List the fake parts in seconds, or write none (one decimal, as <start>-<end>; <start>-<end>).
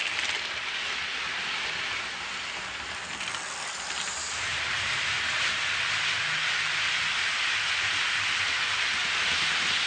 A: none